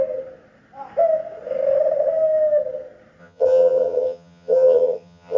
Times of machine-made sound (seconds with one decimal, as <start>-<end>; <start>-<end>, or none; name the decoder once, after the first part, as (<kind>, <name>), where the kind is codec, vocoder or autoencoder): 3.2-5.4 (vocoder, HiFi-GAN)